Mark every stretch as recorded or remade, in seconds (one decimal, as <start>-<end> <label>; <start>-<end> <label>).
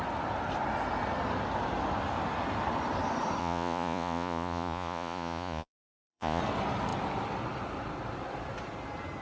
0.0-3.4 recorded; 3.4-6.4 remade; 6.4-9.2 recorded